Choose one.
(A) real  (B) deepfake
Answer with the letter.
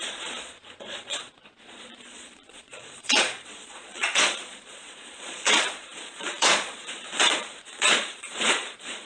B